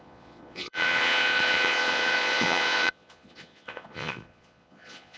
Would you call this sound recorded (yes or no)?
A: no